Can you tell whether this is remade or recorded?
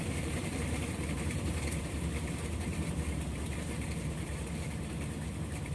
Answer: remade